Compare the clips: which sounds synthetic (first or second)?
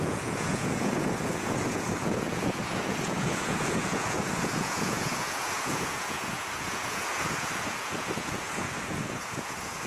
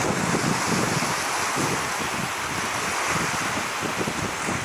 first